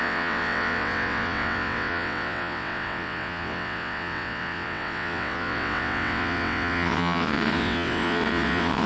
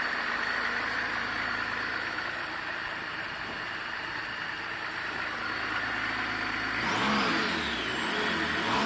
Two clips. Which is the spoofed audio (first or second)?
first